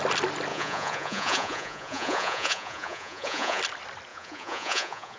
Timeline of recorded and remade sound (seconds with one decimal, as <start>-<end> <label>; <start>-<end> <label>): 0.0-0.5 recorded; 0.5-3.6 remade; 3.6-4.1 recorded; 4.1-5.2 remade

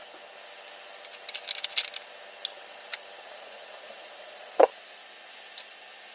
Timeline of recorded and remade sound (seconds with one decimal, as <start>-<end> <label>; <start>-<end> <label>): 0.0-3.2 recorded; 3.2-5.0 remade; 5.0-6.1 recorded

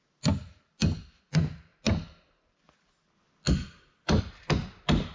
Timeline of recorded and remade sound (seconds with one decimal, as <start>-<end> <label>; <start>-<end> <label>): 0.0-5.1 recorded

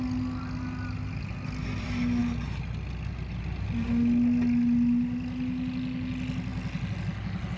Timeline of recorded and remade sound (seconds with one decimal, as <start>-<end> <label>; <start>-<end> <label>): 0.0-7.6 recorded

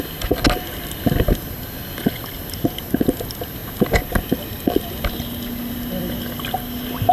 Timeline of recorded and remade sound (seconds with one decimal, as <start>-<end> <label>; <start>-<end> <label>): 0.0-7.1 recorded